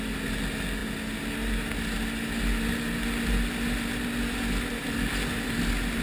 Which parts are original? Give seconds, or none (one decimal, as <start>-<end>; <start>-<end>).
0.0-6.0

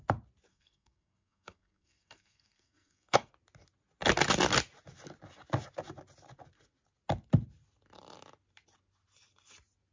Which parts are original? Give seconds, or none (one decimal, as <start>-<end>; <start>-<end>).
0.0-0.5; 3.3-9.9

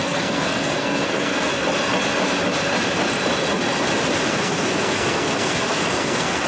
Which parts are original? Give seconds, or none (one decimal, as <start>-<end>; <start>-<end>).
1.5-4.3

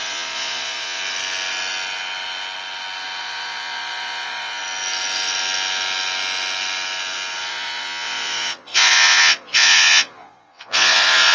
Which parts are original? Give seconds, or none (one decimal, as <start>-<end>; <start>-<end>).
1.0-3.2; 4.6-7.5

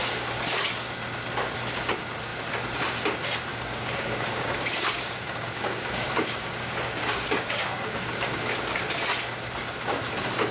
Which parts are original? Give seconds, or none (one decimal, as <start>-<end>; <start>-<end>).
0.0-3.5; 8.8-10.5

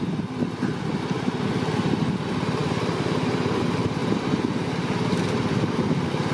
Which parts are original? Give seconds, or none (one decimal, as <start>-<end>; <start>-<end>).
0.0-6.3

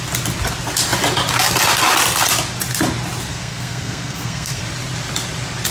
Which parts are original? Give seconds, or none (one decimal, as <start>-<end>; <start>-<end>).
0.0-3.3; 4.6-5.7